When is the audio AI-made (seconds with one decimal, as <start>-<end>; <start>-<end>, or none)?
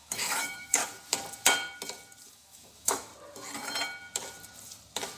0.0-0.8; 2.3-3.1